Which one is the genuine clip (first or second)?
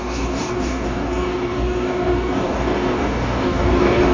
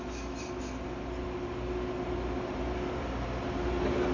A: second